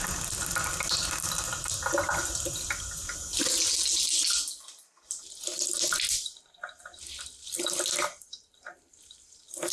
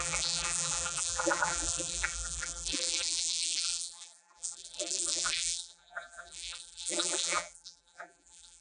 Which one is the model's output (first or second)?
second